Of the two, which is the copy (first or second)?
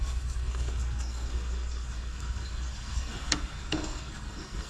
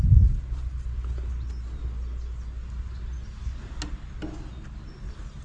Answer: first